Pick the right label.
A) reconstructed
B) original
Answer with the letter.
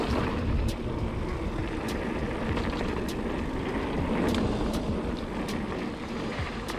A